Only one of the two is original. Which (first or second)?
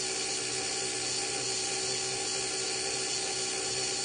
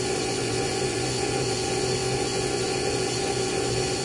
first